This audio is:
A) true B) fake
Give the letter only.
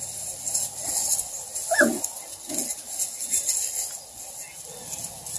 A